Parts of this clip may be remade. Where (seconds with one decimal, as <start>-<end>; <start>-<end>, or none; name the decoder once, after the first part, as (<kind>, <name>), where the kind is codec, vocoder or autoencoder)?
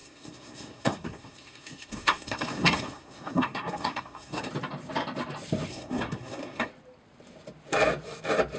0.0-4.5 (codec, SNAC); 5.7-6.7